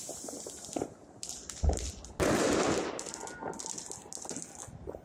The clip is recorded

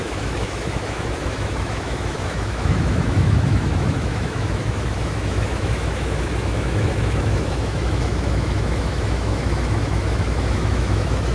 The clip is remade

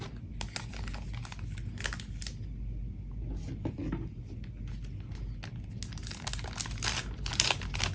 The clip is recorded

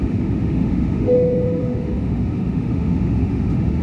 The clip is remade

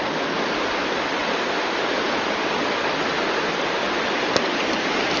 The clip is recorded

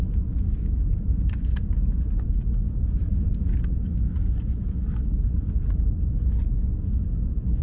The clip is recorded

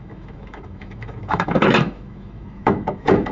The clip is remade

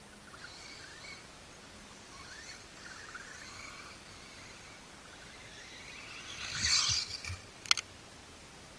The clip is recorded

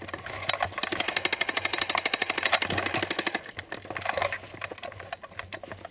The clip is recorded